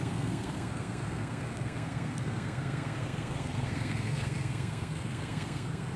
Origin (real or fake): fake